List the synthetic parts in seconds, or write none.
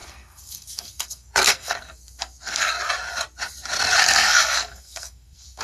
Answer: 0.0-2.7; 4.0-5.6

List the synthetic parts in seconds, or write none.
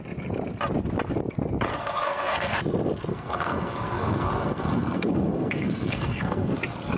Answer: 1.7-2.6; 3.1-6.5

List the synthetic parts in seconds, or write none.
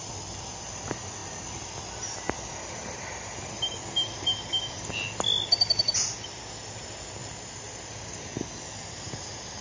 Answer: none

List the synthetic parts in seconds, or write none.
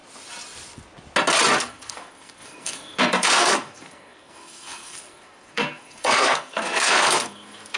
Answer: 1.6-7.8